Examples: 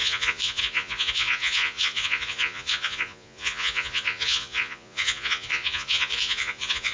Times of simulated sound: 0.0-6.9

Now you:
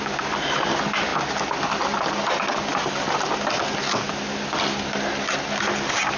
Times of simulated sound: none